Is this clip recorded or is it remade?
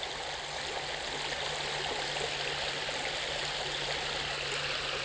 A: recorded